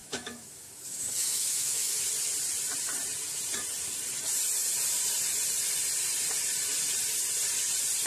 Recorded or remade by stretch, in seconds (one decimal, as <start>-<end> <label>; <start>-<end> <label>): 0.0-2.0 remade; 2.0-8.1 recorded

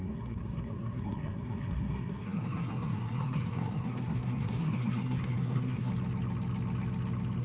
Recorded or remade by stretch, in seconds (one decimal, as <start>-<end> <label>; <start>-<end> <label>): 0.0-5.9 remade; 5.9-7.4 recorded

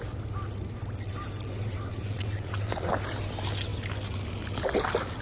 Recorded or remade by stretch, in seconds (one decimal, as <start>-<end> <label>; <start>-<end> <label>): 0.0-1.5 recorded; 1.5-2.9 remade; 2.9-5.2 recorded

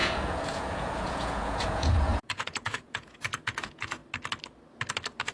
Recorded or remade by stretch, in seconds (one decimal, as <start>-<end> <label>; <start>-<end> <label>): 0.0-4.0 remade; 4.0-5.3 recorded